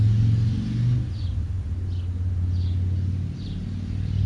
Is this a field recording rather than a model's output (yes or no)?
yes